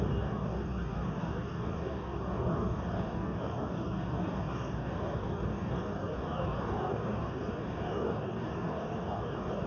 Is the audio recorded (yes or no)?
no